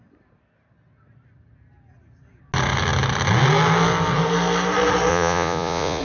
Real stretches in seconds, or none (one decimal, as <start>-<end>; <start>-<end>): 0.0-5.1